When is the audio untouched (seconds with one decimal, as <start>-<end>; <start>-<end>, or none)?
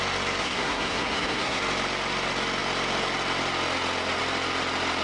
0.0-0.4; 1.6-5.0